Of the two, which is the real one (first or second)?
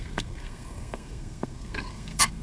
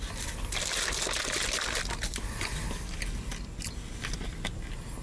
second